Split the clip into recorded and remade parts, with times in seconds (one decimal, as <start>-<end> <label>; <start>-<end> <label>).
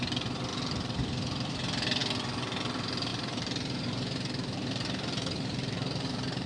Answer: 0.0-0.5 recorded; 0.5-1.5 remade; 1.5-3.1 recorded; 3.1-6.5 remade